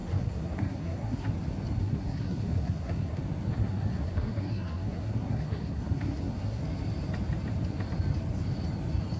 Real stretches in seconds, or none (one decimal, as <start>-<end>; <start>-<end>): 1.3-1.8; 3.2-3.6; 6.6-9.2

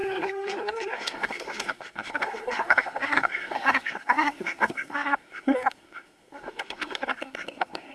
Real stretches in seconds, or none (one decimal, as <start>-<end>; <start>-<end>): none

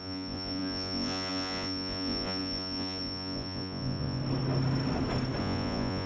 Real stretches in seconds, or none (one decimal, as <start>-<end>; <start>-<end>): 4.2-5.4

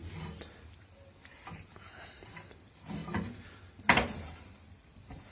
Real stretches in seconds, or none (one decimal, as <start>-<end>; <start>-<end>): 0.0-5.3